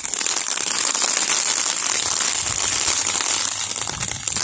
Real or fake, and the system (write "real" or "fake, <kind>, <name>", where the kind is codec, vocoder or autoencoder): real